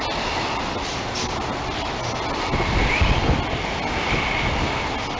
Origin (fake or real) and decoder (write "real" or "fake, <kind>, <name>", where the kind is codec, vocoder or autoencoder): real